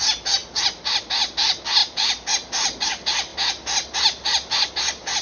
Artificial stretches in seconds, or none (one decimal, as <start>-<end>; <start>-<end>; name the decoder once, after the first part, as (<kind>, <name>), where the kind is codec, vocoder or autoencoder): none